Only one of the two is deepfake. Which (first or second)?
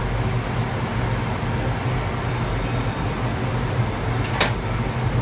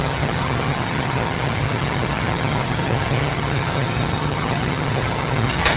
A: second